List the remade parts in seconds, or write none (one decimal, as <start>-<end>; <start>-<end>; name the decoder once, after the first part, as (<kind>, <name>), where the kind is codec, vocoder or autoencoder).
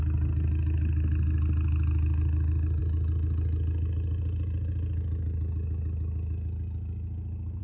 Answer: none